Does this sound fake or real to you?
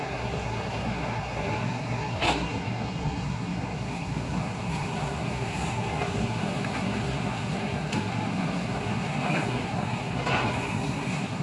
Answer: fake